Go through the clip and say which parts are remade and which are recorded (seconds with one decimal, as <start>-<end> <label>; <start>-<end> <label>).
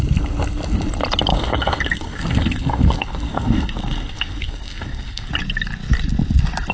0.0-1.3 recorded; 1.3-5.3 remade; 5.3-6.7 recorded